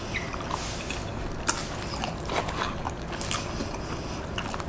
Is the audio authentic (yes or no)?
yes